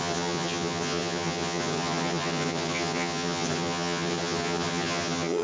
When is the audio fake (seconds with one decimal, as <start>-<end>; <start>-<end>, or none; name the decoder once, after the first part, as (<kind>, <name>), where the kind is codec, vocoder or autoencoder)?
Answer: 0.0-5.4 (vocoder, HiFi-GAN)